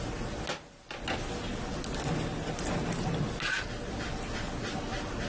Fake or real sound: real